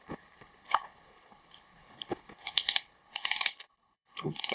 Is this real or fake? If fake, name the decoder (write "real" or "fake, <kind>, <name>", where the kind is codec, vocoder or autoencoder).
fake, codec, HILCodec